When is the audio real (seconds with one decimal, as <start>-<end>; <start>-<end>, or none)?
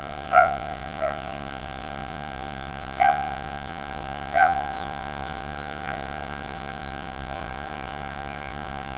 none